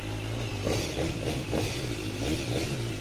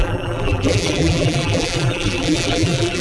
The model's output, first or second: second